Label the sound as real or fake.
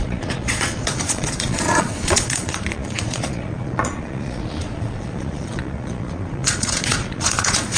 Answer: fake